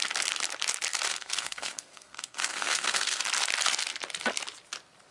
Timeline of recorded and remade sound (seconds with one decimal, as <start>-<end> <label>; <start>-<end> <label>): 0.0-1.1 recorded; 1.1-3.2 remade; 3.2-5.1 recorded

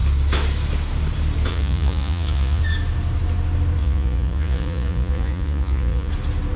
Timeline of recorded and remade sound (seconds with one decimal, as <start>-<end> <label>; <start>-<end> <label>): 0.0-1.5 recorded; 1.5-2.6 remade; 2.6-3.8 recorded; 3.8-6.1 remade; 6.1-6.6 recorded